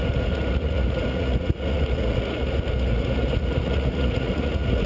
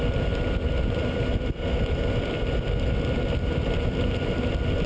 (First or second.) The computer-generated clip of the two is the first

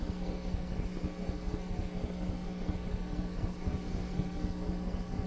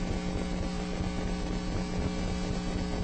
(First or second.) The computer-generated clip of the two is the first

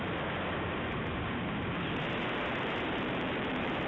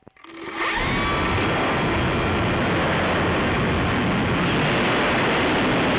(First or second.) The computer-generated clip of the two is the first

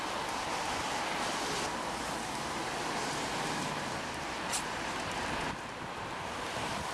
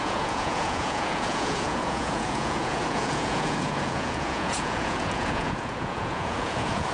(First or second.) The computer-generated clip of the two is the second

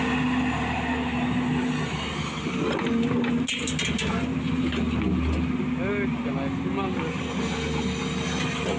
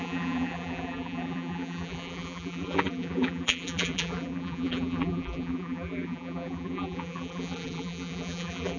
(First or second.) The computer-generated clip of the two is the second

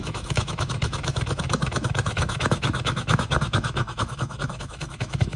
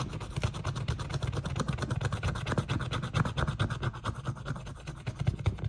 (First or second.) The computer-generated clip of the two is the first